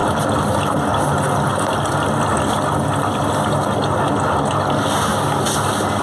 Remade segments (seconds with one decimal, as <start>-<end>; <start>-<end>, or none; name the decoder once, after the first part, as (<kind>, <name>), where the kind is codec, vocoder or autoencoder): none